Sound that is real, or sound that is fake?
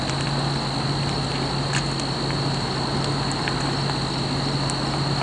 real